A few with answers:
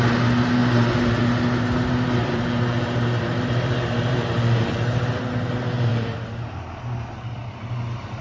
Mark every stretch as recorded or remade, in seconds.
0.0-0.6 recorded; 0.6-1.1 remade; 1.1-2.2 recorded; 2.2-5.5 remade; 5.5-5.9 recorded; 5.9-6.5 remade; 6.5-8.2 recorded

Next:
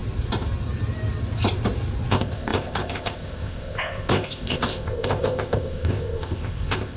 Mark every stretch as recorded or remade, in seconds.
0.0-2.1 recorded; 2.1-7.0 remade

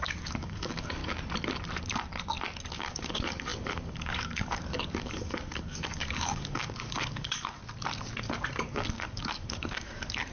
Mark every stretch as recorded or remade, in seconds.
0.0-1.0 remade; 1.0-2.7 recorded; 2.7-7.6 remade; 7.6-8.2 recorded; 8.2-10.3 remade

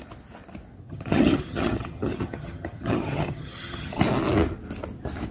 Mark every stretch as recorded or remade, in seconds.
0.0-0.8 recorded; 0.8-4.0 remade; 4.0-5.3 recorded

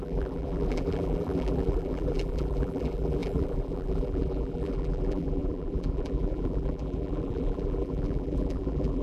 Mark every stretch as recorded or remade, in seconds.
0.0-9.0 remade

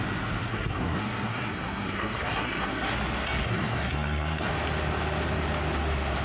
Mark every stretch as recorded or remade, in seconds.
0.0-0.5 recorded; 0.5-2.9 remade; 2.9-3.4 recorded; 3.4-4.5 remade; 4.5-6.2 recorded